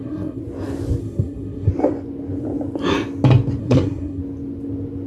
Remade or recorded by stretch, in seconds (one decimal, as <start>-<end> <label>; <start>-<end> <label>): 0.0-0.4 remade; 0.4-1.0 recorded; 1.0-1.7 remade; 1.7-3.6 recorded; 3.6-4.2 remade; 4.2-5.1 recorded